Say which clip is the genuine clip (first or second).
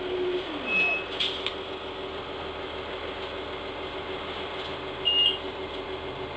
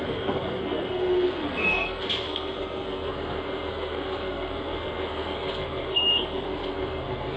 first